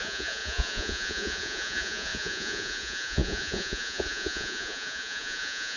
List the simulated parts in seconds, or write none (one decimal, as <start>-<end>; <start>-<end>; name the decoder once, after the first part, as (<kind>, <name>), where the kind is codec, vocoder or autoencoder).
0.0-5.8 (vocoder, Vocos)